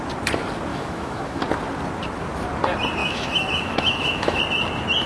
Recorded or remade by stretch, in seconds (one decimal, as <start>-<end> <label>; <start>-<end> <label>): 0.0-0.7 recorded; 0.7-1.4 remade; 1.4-3.0 recorded; 3.0-4.4 remade; 4.4-5.1 recorded